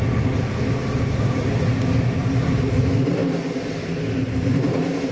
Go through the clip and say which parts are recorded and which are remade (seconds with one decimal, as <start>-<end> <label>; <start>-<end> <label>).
0.0-0.8 recorded; 0.8-1.5 remade; 1.5-2.2 recorded; 2.2-2.8 remade; 2.8-3.2 recorded; 3.2-5.1 remade